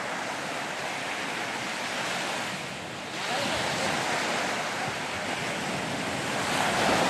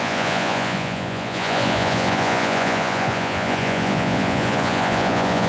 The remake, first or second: second